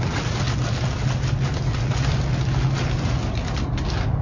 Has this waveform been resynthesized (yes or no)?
no